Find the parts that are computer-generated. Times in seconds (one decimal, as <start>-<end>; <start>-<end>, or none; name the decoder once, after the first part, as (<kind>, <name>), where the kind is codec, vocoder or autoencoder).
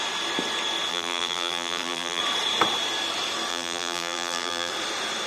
0.9-2.2 (vocoder, BigVGAN v2); 3.5-4.7